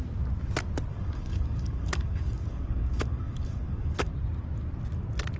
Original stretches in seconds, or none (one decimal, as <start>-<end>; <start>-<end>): 0.0-0.9; 4.1-5.4